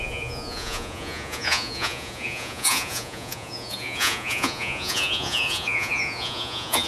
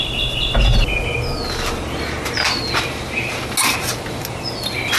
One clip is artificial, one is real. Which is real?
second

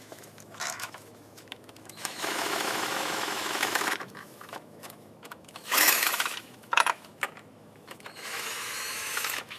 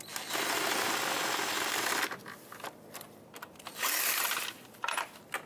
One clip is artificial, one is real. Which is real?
second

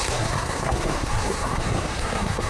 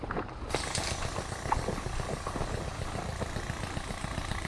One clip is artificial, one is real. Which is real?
second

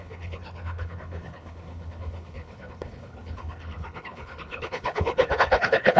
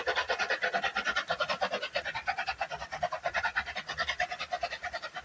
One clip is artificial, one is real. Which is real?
second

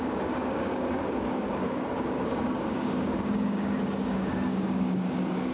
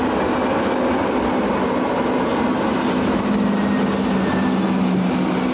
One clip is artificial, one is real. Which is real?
second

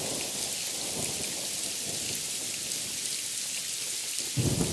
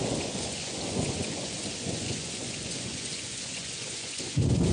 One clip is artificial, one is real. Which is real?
first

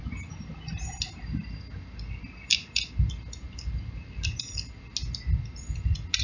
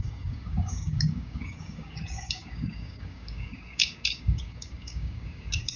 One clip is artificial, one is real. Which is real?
first